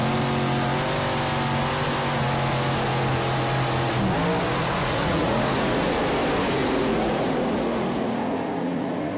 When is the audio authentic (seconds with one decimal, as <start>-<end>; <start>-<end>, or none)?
0.0-4.6; 6.0-6.6